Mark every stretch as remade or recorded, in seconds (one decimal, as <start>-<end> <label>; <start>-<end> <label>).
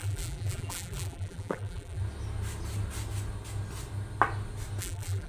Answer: 0.0-2.0 remade; 2.0-4.8 recorded; 4.8-5.3 remade